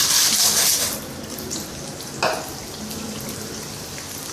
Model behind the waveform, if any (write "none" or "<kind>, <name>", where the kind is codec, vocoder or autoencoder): none